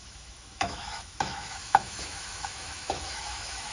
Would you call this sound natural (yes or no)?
no